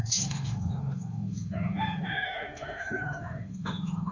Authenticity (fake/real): fake